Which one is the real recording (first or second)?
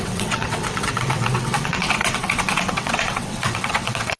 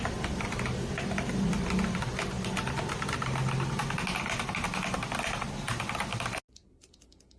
second